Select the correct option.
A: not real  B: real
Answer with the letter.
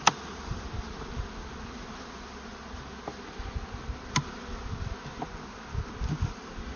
B